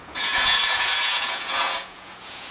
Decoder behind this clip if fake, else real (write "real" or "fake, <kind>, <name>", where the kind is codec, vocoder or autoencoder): fake, vocoder, Vocos